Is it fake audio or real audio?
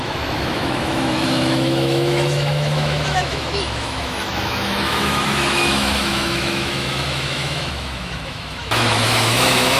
fake